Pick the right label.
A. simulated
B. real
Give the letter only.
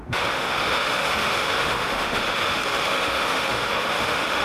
A